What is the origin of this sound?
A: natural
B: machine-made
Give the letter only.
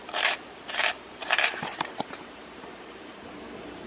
B